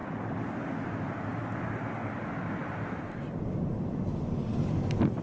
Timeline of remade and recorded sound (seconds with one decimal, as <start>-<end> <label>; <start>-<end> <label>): 0.0-0.6 remade; 0.6-1.3 recorded; 1.3-2.2 remade; 2.2-2.6 recorded; 2.6-3.8 remade; 3.8-5.2 recorded